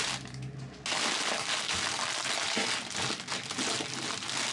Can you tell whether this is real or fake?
real